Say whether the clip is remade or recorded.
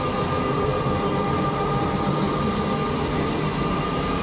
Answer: recorded